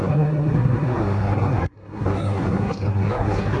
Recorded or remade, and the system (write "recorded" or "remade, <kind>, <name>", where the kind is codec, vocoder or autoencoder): remade, codec, SNAC